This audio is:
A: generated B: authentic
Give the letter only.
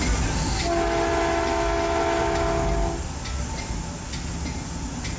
B